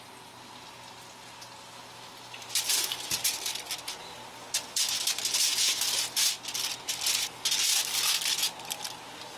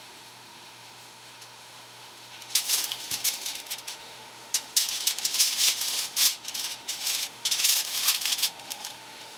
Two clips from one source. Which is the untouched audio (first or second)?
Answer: first